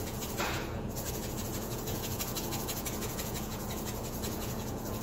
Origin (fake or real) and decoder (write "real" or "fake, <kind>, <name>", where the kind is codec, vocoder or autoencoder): fake, vocoder, Vocos